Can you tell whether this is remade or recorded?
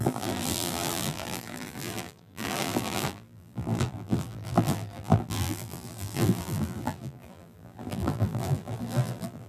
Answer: remade